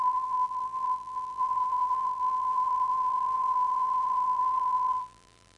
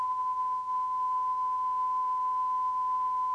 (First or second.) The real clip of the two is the second